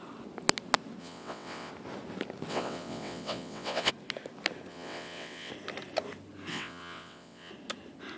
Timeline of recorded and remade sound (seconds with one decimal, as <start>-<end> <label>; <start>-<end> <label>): 0.0-1.0 recorded; 1.0-1.7 remade; 1.7-2.5 recorded; 2.5-3.9 remade; 3.9-4.7 recorded; 4.7-5.5 remade; 5.5-6.5 recorded; 6.5-7.5 remade; 7.5-8.2 recorded